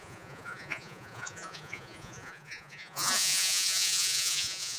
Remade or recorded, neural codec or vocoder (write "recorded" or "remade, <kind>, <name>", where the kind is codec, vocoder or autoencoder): remade, vocoder, Vocos